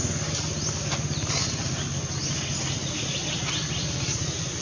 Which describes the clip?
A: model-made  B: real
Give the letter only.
B